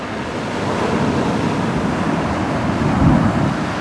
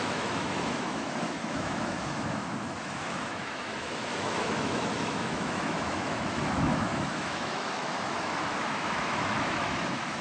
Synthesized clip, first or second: second